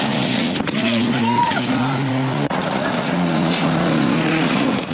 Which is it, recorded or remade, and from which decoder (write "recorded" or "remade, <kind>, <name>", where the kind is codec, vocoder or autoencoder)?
remade, vocoder, Vocos